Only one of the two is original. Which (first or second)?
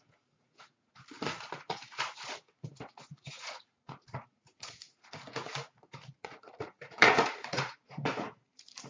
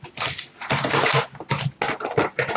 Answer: second